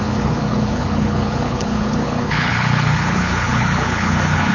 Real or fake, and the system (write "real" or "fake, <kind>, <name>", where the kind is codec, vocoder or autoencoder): fake, codec, HILCodec